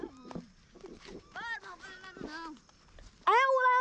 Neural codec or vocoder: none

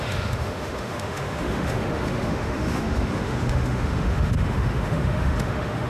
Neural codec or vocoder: autoencoder, DAC-VAE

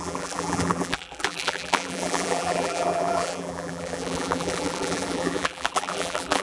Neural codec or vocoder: vocoder, BigVGAN v2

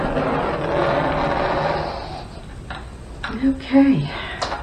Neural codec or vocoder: none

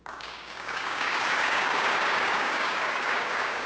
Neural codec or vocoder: codec, DAC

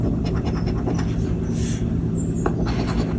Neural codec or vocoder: none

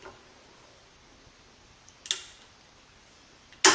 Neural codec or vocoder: none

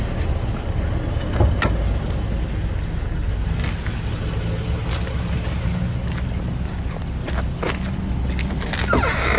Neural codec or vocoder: none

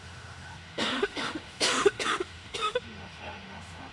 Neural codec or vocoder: autoencoder, DAC-VAE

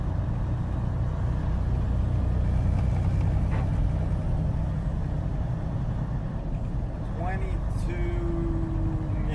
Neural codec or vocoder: none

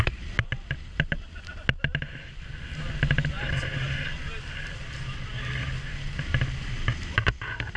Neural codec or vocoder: none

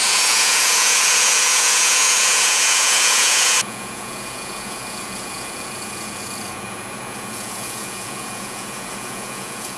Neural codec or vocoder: vocoder, Vocos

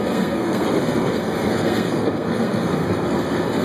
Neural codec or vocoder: codec, SNAC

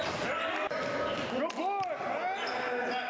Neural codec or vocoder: none